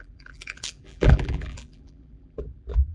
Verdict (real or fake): fake